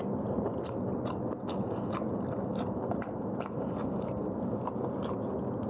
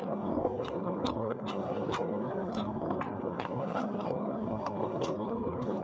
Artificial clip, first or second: second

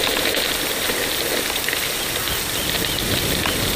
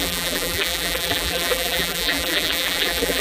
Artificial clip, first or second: second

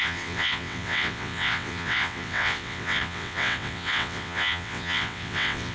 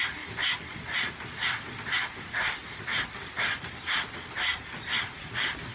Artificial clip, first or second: first